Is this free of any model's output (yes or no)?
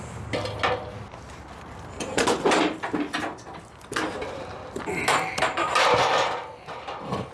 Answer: yes